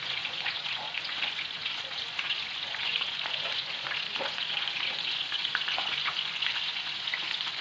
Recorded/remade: remade